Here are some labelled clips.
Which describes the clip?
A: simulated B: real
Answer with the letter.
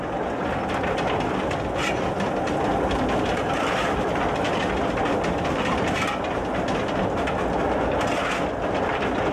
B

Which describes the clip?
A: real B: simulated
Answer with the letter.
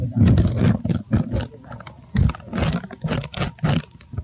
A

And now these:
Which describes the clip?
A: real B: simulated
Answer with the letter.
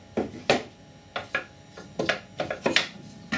A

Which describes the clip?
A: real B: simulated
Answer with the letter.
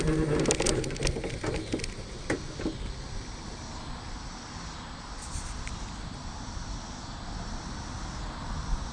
A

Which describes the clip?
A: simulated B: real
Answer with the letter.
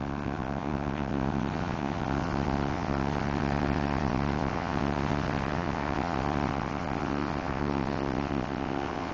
A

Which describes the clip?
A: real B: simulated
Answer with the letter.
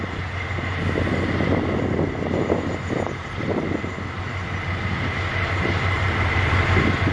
A